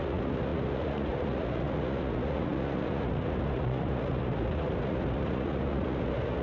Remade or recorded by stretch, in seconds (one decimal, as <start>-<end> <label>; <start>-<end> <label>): 0.0-6.4 remade